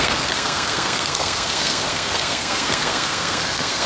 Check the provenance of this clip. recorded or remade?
remade